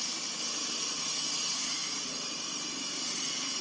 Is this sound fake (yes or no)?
no